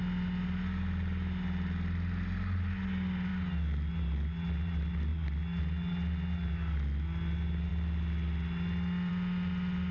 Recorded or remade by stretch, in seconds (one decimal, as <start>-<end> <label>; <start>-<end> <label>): 0.0-9.9 recorded